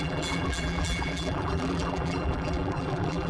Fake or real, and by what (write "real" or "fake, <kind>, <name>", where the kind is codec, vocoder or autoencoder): fake, vocoder, BigVGAN v2